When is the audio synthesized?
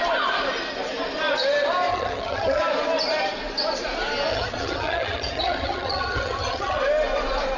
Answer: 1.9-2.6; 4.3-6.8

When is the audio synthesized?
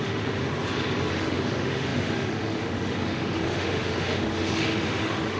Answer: 0.0-0.4; 1.1-5.4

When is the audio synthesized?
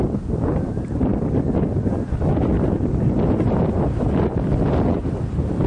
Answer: none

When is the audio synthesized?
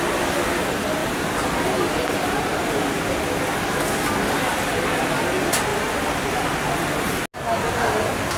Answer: 1.0-3.0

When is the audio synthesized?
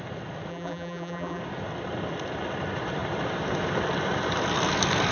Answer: 0.5-1.4